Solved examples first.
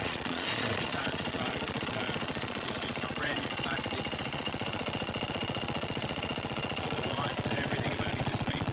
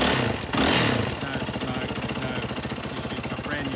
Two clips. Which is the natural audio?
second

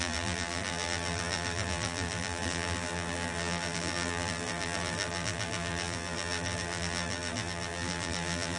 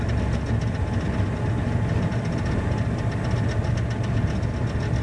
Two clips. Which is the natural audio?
second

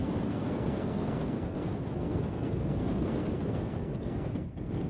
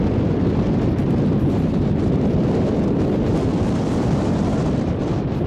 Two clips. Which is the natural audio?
second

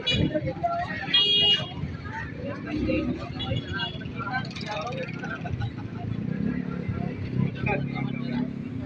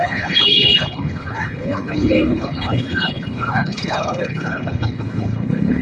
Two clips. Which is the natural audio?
first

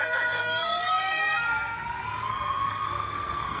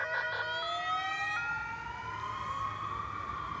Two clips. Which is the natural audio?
second